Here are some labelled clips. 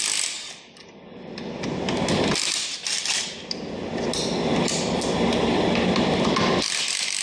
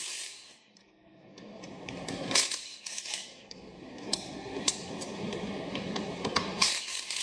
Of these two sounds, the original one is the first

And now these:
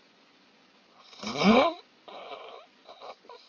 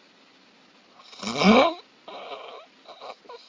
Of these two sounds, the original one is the second